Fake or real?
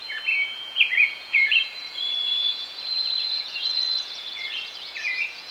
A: fake